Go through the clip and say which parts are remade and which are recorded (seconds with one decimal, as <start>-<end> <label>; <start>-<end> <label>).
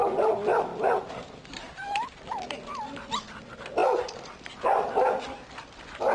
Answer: 0.0-6.1 recorded